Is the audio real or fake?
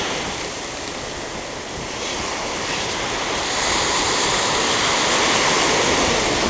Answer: real